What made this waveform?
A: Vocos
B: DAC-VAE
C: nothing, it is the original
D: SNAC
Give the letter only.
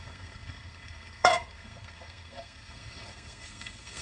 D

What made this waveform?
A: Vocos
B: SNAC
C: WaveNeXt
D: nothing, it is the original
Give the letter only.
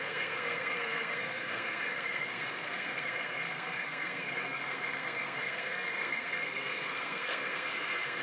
B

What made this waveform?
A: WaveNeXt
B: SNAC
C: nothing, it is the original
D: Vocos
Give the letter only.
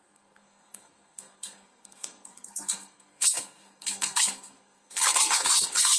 B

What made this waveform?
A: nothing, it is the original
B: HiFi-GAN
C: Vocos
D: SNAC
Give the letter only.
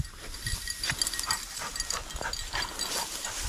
A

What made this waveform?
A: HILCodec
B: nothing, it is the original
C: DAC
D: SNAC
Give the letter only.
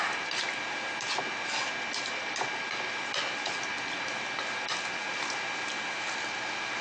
B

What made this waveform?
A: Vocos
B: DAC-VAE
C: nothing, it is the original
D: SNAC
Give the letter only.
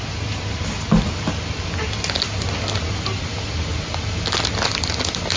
C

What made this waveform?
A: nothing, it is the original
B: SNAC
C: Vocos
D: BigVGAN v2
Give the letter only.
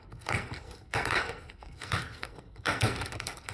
B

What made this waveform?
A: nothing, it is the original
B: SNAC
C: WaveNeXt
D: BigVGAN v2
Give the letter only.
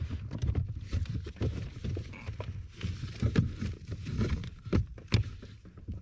A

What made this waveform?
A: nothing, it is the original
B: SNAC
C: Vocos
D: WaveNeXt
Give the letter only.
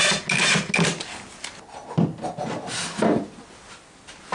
A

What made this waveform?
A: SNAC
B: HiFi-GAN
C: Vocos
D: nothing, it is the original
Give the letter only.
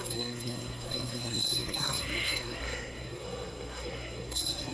A